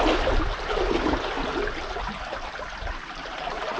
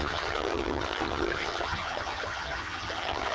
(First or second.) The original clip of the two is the first